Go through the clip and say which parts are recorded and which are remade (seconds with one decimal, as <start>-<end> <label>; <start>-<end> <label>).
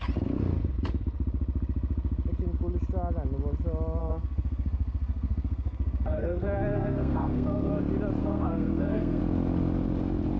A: 0.0-4.0 recorded; 4.0-7.8 remade; 7.8-8.2 recorded; 8.2-9.2 remade; 9.2-10.4 recorded